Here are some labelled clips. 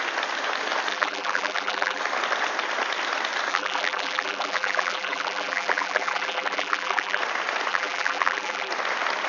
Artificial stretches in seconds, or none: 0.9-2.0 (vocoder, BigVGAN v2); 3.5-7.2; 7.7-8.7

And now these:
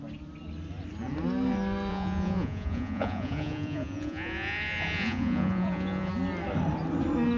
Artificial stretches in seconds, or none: 1.9-6.1 (vocoder, Vocos)

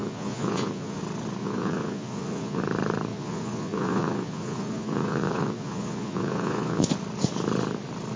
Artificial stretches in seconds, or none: 0.0-1.0 (vocoder, Vocos); 1.4-2.6; 3.1-6.9